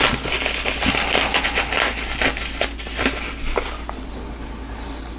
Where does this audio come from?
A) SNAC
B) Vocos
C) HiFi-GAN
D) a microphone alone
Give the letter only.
D